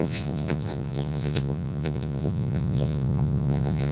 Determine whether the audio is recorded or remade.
remade